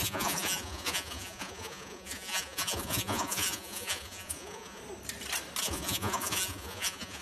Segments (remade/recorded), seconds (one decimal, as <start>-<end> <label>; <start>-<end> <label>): 0.0-4.8 remade; 4.8-5.6 recorded; 5.6-7.2 remade